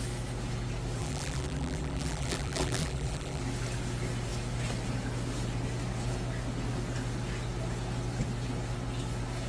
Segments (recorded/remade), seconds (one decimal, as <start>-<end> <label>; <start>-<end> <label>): 0.0-1.0 recorded; 1.0-3.4 remade; 3.4-9.5 recorded